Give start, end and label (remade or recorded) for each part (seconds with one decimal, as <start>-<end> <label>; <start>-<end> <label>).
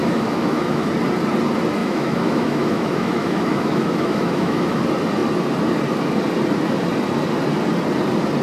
0.0-0.9 remade; 0.9-1.8 recorded; 1.8-4.8 remade; 4.8-8.4 recorded